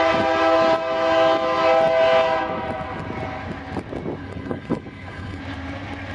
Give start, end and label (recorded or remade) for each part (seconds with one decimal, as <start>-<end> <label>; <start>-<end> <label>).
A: 0.0-4.2 recorded; 4.2-5.4 remade; 5.4-6.1 recorded